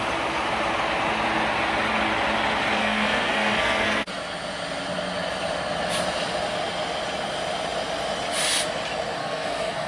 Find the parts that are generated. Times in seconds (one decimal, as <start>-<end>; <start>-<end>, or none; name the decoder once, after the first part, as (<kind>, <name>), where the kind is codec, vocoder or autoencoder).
2.8-4.1 (codec, SNAC); 9.2-9.9